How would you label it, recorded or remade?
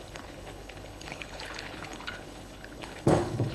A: remade